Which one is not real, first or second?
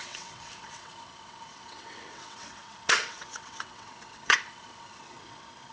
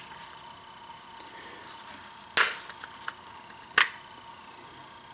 first